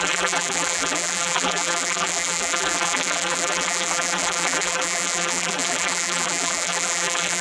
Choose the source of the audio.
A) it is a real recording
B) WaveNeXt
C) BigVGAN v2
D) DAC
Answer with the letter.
C